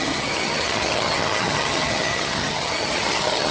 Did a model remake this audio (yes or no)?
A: yes